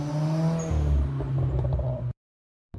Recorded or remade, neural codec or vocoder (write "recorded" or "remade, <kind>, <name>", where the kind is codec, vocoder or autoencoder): recorded